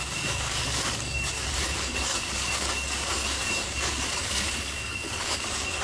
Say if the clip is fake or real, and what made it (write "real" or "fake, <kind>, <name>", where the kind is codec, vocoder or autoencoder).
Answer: fake, codec, DAC